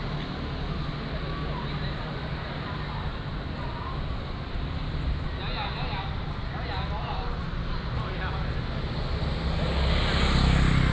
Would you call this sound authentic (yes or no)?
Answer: yes